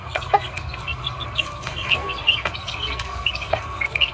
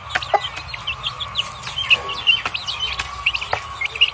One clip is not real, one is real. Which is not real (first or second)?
first